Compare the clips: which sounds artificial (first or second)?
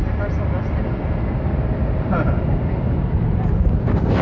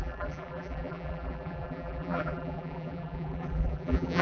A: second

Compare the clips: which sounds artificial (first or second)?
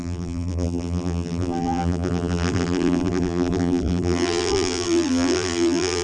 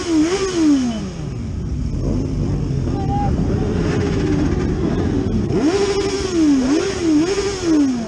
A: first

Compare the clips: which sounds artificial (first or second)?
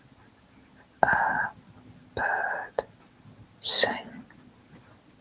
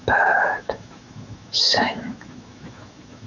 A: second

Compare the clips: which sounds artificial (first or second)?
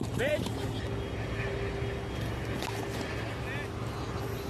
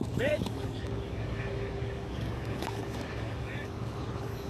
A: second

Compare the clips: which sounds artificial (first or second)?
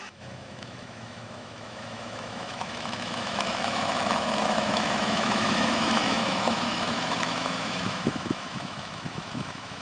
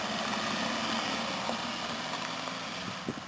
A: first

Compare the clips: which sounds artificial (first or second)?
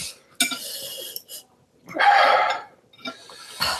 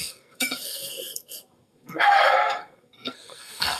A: second